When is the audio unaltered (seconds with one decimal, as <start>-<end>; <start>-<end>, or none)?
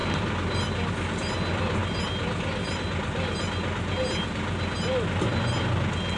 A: 0.0-6.2